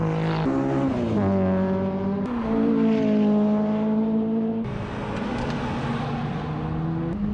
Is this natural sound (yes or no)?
yes